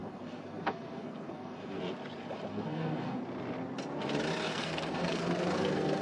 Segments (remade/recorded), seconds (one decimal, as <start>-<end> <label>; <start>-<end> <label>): 0.0-1.8 remade; 1.8-2.5 recorded; 2.5-3.2 remade; 3.2-4.5 recorded; 4.5-6.0 remade